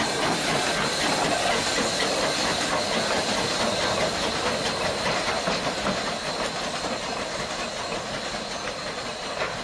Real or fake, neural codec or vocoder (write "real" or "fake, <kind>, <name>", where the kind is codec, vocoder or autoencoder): real